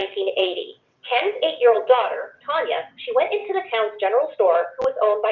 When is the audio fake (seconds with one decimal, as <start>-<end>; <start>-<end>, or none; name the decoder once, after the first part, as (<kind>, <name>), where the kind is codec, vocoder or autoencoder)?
0.0-2.4 (vocoder, WaveNeXt)